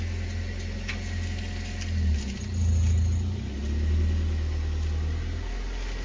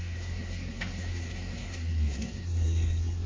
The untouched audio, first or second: first